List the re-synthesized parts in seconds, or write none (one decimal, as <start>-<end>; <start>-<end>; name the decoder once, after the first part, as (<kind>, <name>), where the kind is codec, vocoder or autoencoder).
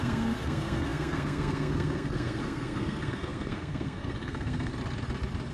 0.0-4.7 (codec, SNAC)